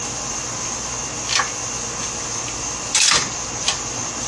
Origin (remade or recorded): recorded